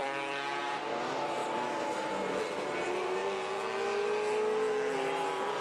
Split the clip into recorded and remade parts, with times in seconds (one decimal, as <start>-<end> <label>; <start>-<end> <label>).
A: 0.0-5.6 recorded